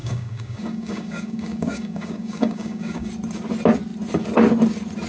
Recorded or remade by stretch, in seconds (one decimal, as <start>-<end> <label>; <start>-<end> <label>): 0.0-3.1 remade; 3.1-5.1 recorded